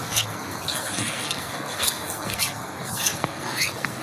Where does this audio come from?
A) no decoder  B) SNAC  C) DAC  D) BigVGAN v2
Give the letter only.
B